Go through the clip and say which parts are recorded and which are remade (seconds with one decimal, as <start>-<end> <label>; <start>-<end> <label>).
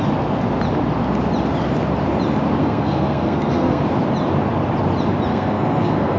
0.0-2.6 recorded; 2.6-3.8 remade; 3.8-5.3 recorded; 5.3-6.2 remade